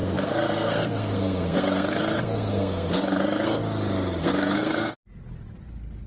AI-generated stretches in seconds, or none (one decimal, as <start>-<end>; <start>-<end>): 0.0-3.6; 4.2-4.9